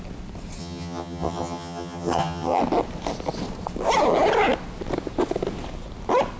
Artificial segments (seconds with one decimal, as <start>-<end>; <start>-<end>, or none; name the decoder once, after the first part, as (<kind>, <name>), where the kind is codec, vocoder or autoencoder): 0.6-2.6 (vocoder, HiFi-GAN)